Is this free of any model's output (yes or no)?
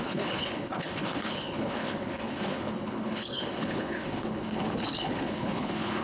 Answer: no